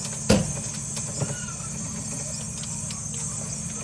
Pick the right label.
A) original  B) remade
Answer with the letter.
A